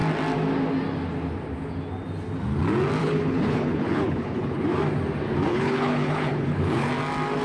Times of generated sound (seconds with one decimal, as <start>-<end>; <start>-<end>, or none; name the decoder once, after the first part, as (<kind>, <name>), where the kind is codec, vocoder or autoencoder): 3.0-4.6 (codec, HILCodec); 5.5-6.9